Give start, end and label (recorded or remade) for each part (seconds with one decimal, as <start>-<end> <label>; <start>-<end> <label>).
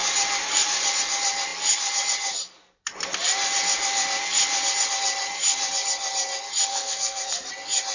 0.0-6.7 recorded; 6.7-7.5 remade; 7.5-7.9 recorded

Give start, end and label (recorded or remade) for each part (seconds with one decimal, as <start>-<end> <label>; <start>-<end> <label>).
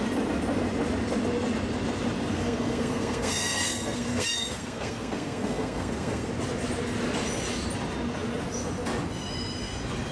0.0-2.3 recorded; 2.3-6.3 remade; 6.3-10.1 recorded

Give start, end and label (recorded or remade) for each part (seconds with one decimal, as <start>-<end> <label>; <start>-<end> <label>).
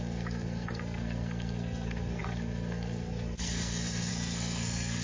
0.0-5.0 remade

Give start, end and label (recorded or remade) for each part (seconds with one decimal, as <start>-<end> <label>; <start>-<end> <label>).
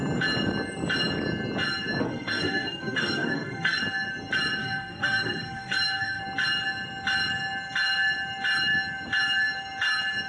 0.0-2.0 recorded; 2.0-3.8 remade; 3.8-4.6 recorded; 4.6-6.2 remade; 6.2-10.3 recorded